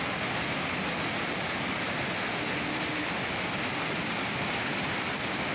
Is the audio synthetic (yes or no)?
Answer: no